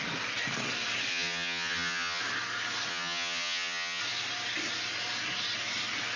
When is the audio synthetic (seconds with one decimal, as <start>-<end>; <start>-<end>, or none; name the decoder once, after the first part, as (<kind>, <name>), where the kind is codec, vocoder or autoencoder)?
1.1-2.2 (vocoder, HiFi-GAN); 2.9-4.0